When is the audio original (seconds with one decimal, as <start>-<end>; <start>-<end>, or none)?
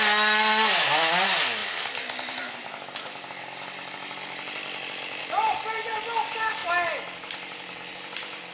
0.0-8.5